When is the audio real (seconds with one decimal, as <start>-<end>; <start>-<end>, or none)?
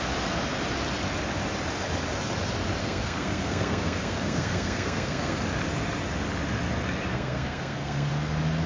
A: 0.0-2.8; 5.4-7.1; 8.1-8.7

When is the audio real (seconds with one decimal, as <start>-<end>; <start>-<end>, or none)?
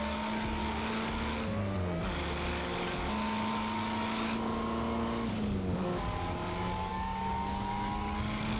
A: 0.6-3.5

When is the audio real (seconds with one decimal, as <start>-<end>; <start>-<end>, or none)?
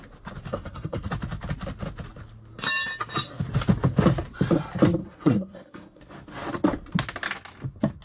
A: 0.0-0.5; 1.1-5.0; 6.0-8.0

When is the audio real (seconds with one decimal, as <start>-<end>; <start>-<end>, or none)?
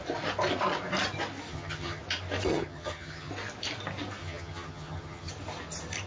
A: 0.0-1.5; 2.0-2.5; 3.3-4.2; 5.3-6.1